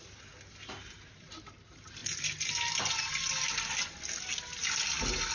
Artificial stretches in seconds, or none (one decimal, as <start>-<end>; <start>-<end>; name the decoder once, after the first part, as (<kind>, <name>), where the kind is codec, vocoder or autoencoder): none